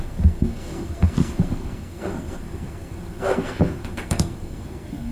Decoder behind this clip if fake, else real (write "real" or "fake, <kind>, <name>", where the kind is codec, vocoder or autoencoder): fake, codec, SNAC